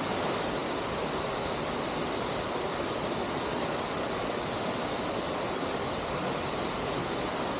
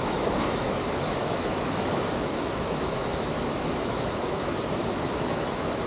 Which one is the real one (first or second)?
first